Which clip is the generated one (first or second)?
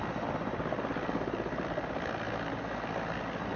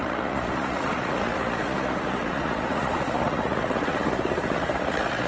second